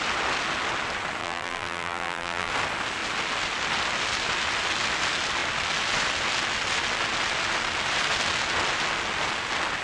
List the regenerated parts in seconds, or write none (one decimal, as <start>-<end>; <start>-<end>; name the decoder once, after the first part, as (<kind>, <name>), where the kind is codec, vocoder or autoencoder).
1.2-2.5 (vocoder, BigVGAN v2)